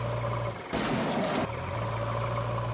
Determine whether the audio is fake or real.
real